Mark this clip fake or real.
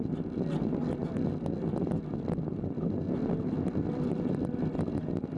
real